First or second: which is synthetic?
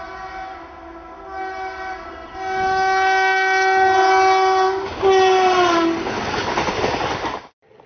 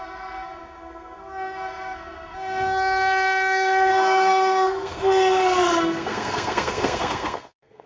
second